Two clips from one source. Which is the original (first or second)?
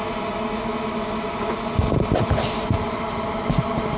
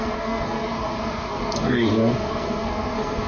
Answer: first